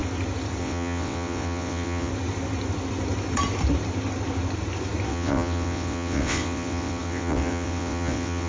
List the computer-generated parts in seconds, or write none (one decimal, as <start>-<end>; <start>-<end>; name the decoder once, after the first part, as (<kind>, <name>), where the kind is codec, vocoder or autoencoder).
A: 0.6-2.1 (vocoder, WaveNeXt); 5.1-8.5